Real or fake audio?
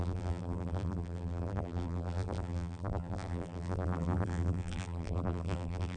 fake